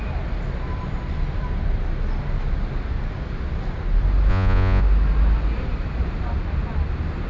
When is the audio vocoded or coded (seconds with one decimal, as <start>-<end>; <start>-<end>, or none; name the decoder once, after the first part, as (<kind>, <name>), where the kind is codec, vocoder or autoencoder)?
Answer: 4.3-4.8 (vocoder, Vocos)